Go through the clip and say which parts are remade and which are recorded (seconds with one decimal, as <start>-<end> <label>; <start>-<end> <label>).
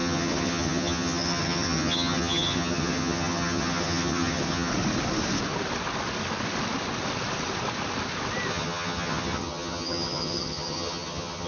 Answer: 0.0-4.7 remade; 4.7-8.5 recorded; 8.5-11.5 remade